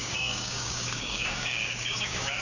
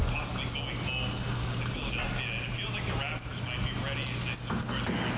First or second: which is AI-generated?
first